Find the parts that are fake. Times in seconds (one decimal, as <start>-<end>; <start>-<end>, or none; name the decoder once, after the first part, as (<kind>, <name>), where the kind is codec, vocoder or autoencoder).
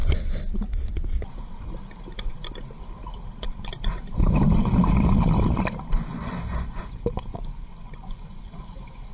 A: 6.1-6.8 (vocoder, Vocos); 7.3-8.5